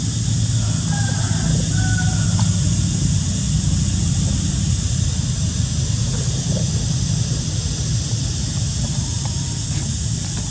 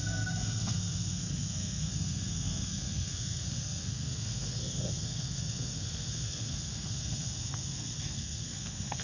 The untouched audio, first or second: first